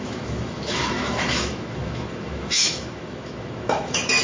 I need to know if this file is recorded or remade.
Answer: remade